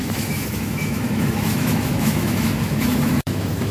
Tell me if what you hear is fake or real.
fake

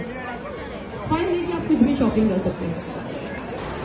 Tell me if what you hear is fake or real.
real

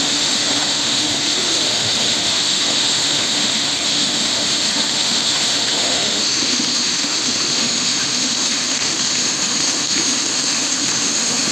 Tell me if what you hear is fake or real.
fake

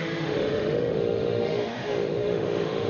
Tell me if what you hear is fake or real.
fake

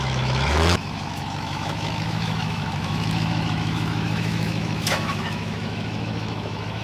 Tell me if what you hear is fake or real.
fake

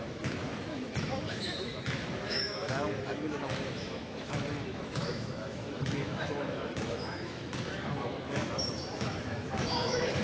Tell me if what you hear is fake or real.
fake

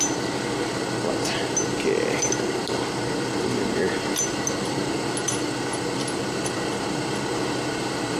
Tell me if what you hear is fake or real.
real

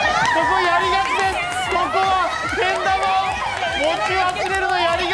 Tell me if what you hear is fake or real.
real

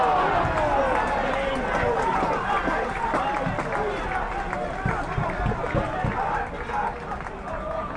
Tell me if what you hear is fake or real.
real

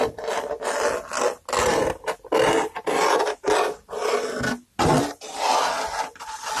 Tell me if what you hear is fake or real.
real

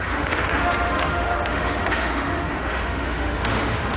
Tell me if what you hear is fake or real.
fake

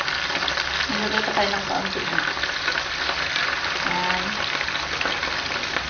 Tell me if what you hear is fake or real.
real